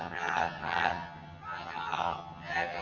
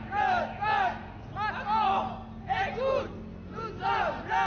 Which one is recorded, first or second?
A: second